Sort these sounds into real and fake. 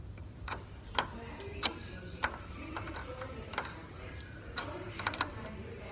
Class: fake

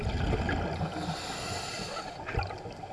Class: real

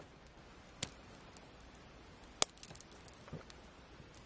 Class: real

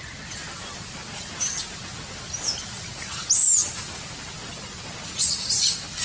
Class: real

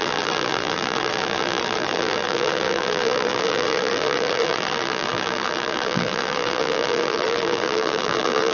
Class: fake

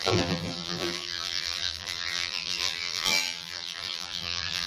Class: fake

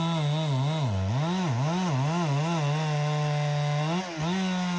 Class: real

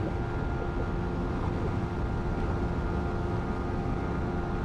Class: real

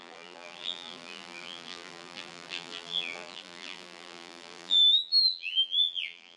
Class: fake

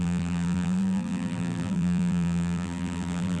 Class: fake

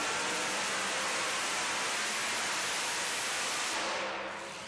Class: fake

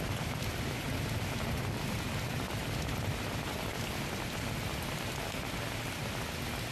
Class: real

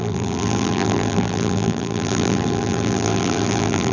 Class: fake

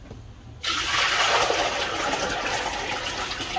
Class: real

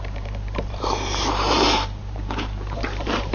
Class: fake